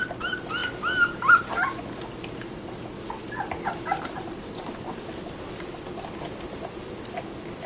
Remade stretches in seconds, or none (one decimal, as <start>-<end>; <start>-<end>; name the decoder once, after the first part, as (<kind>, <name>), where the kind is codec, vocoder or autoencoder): none